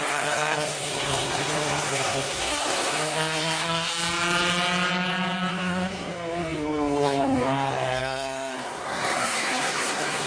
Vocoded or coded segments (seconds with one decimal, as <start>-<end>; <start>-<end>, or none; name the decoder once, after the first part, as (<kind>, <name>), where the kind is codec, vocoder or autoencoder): 0.0-3.9 (codec, SNAC); 5.5-10.3